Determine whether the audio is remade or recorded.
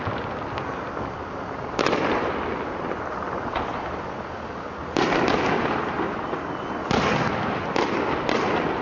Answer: recorded